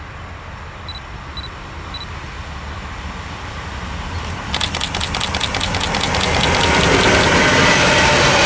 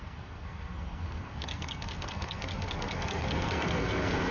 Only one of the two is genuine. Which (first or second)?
first